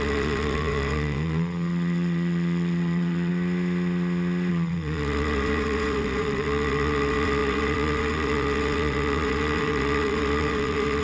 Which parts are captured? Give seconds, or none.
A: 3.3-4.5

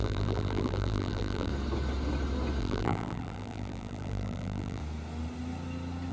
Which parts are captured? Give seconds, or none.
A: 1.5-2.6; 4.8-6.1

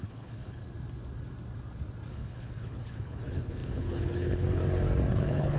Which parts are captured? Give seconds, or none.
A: 0.6-2.1; 4.6-5.1